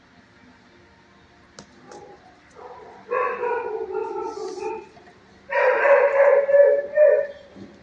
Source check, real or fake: real